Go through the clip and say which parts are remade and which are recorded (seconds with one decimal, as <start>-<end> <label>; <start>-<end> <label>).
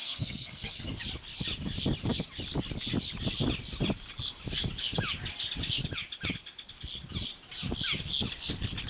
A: 0.0-0.9 remade; 0.9-8.9 recorded